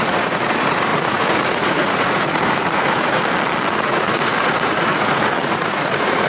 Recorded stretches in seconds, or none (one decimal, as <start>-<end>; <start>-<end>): 3.2-3.7